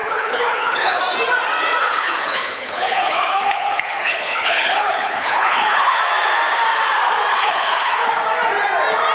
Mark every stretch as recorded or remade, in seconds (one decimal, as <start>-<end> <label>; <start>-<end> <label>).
0.0-1.0 remade; 1.0-1.8 recorded; 1.8-6.0 remade; 6.0-7.3 recorded; 7.3-8.1 remade; 8.1-9.1 recorded